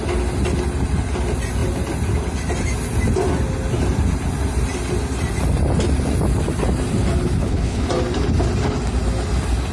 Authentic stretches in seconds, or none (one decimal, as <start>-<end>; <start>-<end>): 0.0-7.4; 7.9-9.7